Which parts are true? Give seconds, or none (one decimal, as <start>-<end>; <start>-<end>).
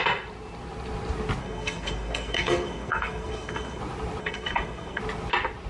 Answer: 0.0-1.4; 3.8-4.2; 5.0-5.7